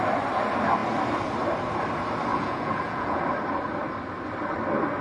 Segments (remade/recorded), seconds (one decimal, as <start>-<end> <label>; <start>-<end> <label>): 0.0-2.3 recorded; 2.3-3.2 remade; 3.2-5.0 recorded